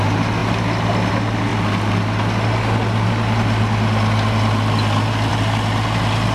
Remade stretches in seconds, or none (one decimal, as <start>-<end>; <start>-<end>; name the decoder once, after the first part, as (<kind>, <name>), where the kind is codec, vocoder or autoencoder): none